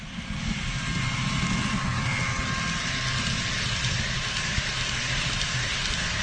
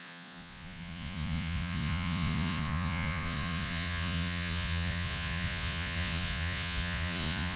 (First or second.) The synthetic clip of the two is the second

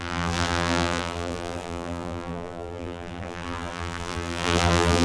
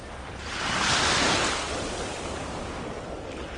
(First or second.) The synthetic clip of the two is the first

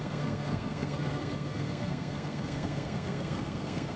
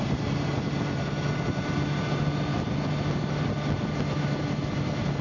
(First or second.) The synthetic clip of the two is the first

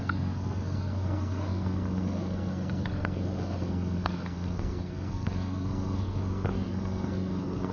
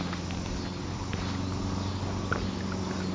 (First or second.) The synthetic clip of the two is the first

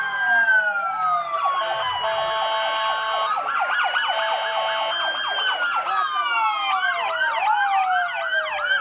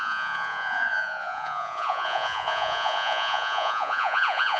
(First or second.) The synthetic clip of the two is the second